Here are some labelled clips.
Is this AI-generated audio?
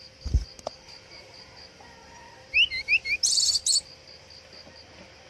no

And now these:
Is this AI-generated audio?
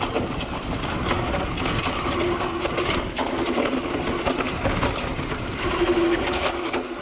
no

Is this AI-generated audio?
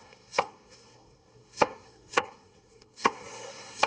yes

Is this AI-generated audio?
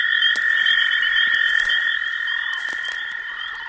no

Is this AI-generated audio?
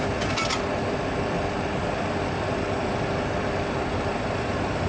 no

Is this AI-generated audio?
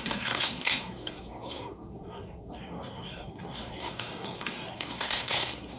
yes